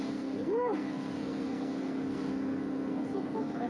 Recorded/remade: remade